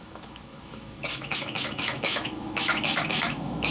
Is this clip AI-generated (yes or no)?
yes